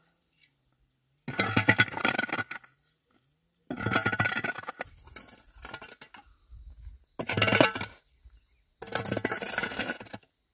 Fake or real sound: real